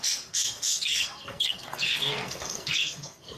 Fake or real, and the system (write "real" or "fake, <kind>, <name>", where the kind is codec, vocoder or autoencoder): fake, codec, SNAC